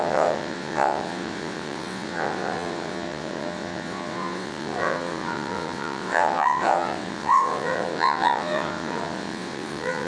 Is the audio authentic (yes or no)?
no